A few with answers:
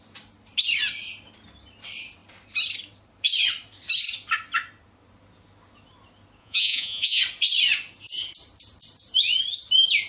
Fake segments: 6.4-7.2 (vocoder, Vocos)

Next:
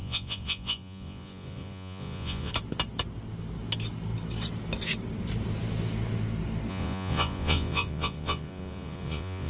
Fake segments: 0.0-2.5 (vocoder, Vocos); 6.7-9.5

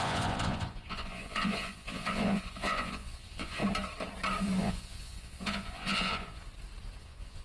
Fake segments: 0.0-3.6 (vocoder, Vocos); 4.6-6.4; 7.0-7.4